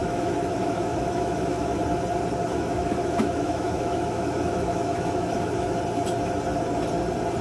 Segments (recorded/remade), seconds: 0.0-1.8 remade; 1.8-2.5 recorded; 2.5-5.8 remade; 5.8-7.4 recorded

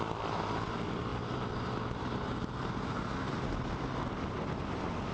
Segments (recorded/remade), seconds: 0.0-1.1 recorded; 1.1-3.6 remade; 3.6-5.1 recorded

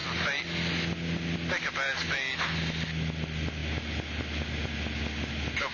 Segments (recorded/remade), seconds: 0.0-5.7 recorded